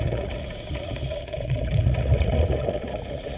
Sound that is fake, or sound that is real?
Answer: fake